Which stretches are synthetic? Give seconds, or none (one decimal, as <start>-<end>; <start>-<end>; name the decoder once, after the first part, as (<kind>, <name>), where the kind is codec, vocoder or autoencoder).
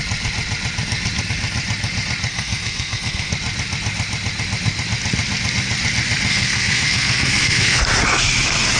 2.3-3.3 (codec, SNAC); 6.3-7.8